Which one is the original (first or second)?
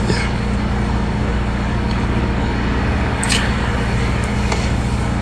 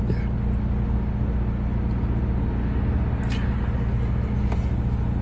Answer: second